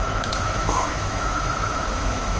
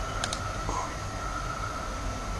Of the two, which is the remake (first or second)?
first